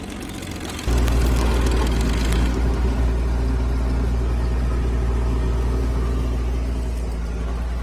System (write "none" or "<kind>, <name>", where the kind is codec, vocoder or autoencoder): none